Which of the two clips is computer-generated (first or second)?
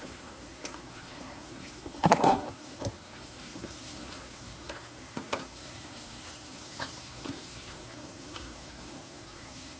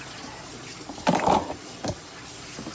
first